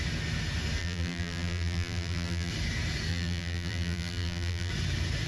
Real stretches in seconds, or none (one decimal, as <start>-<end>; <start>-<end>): 0.0-0.8; 2.5-3.1; 4.7-5.3